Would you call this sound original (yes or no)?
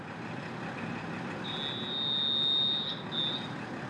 yes